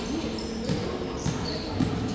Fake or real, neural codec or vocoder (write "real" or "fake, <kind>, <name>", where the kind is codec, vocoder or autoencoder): real